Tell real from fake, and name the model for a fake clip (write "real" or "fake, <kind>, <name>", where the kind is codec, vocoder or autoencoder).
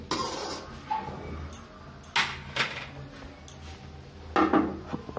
real